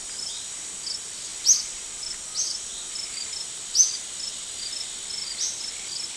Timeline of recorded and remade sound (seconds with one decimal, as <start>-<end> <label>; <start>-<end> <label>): 0.0-6.2 recorded